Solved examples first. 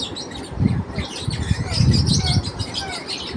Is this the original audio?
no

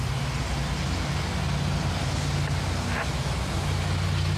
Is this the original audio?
yes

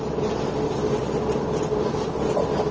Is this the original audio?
no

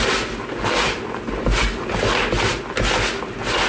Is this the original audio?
yes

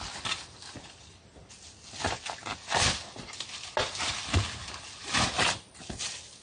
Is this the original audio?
yes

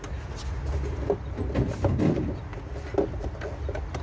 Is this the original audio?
yes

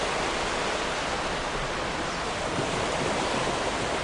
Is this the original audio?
yes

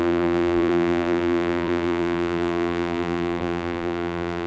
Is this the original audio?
no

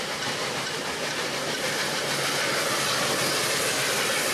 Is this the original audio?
yes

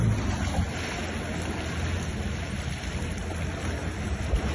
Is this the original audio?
yes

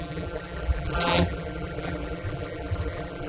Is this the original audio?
no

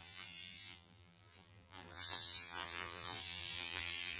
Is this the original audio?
no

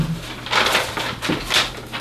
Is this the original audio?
yes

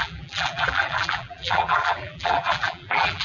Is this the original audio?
no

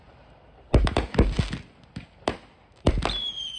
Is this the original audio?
yes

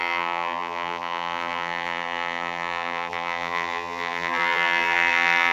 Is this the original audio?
no